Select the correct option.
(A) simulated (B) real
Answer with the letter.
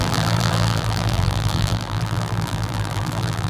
A